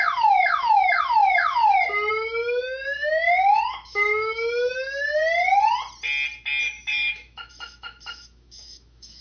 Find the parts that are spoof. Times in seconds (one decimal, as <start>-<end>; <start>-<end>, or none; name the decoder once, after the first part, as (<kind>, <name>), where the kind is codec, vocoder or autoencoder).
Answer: 0.0-1.6 (autoencoder, DAC-VAE); 2.1-5.2; 6.6-9.2